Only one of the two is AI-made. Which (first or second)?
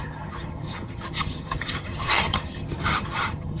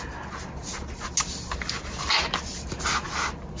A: first